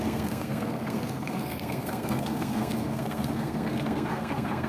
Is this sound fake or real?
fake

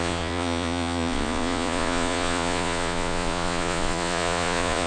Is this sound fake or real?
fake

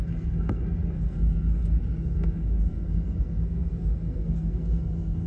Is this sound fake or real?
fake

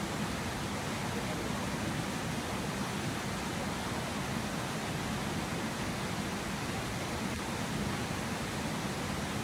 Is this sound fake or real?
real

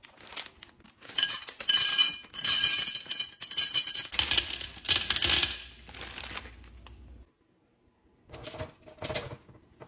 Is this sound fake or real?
real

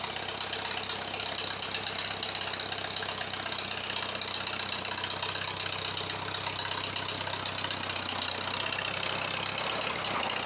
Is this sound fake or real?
real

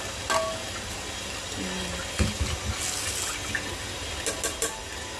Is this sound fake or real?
real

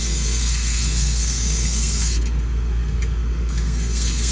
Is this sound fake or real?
fake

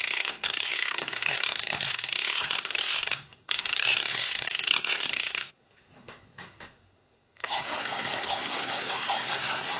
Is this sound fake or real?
fake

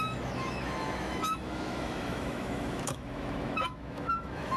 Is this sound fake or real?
fake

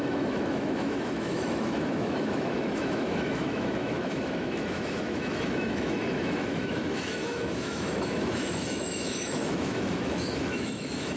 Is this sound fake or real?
fake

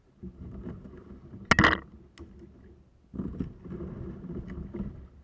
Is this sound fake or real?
real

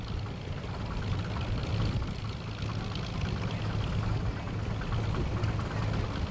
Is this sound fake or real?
real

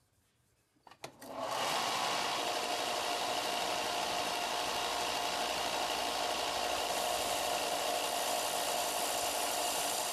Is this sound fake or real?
real